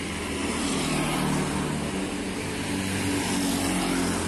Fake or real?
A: real